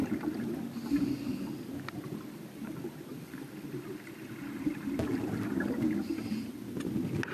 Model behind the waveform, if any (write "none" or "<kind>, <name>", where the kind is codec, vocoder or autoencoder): none